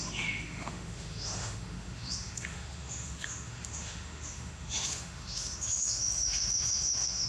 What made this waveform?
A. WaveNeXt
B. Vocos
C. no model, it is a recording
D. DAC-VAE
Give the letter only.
D